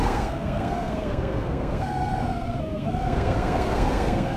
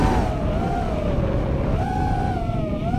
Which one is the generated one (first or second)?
first